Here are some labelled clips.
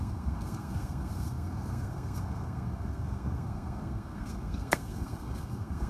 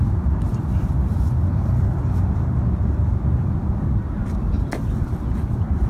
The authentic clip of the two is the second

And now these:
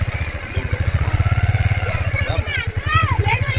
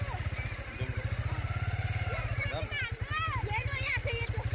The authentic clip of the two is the second